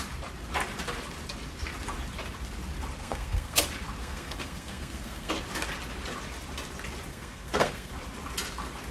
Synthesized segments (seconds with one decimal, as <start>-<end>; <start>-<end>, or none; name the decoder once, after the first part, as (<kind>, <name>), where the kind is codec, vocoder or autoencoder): 3.0-3.6 (codec, SNAC); 4.0-5.3; 7.1-7.9